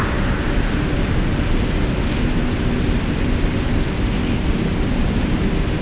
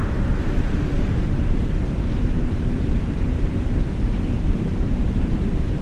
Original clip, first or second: first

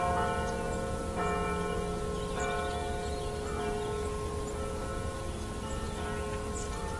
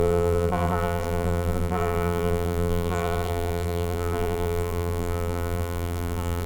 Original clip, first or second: first